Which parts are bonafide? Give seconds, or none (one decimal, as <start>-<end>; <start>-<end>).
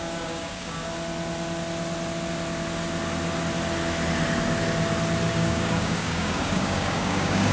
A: 0.8-5.3